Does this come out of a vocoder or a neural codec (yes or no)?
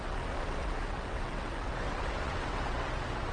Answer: yes